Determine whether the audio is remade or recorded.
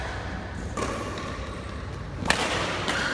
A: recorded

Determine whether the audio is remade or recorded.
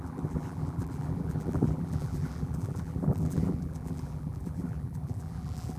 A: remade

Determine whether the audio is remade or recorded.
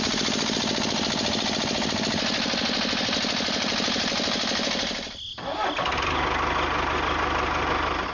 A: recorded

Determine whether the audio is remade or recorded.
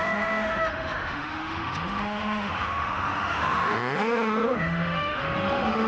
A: remade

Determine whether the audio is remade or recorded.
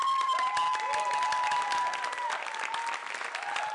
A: recorded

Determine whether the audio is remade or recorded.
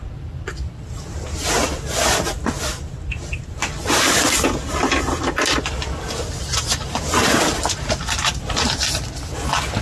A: recorded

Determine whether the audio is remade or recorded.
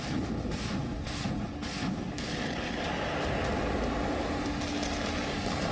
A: recorded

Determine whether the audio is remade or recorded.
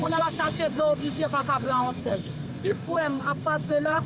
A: remade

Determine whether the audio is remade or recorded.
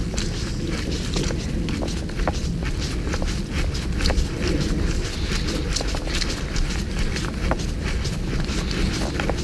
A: recorded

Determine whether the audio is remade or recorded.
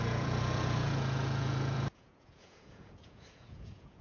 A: remade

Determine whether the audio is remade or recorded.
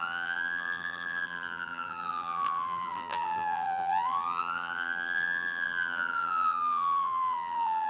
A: remade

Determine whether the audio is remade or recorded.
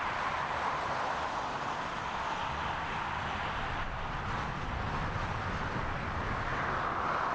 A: remade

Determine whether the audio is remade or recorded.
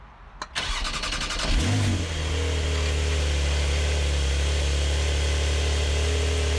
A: recorded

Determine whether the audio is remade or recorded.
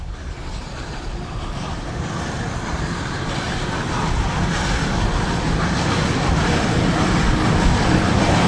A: recorded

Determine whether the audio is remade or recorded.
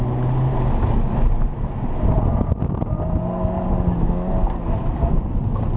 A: recorded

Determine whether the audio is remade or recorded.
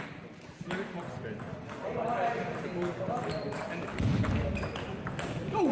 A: recorded